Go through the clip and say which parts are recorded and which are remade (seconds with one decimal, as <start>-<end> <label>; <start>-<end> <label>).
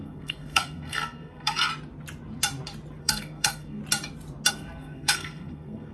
0.0-1.7 remade; 1.7-3.0 recorded; 3.0-3.8 remade; 3.8-4.5 recorded; 4.5-5.9 remade